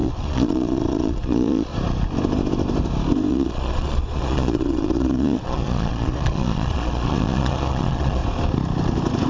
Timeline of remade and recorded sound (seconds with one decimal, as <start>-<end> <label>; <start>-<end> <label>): 0.0-1.7 remade; 1.7-3.3 recorded; 3.3-8.2 remade; 8.2-9.3 recorded